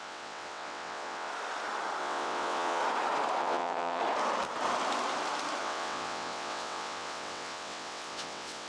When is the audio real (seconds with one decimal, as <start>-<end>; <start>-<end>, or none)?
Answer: 1.3-2.0; 2.8-3.4; 4.0-5.6

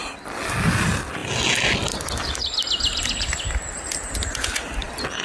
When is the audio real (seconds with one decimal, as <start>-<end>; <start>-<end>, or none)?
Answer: 0.0-5.2

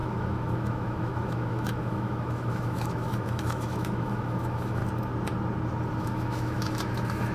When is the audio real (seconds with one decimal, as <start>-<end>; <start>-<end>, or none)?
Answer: 4.8-6.0